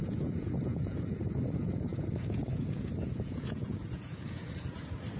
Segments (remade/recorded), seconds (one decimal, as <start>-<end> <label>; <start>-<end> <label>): 0.0-4.4 remade; 4.4-5.2 recorded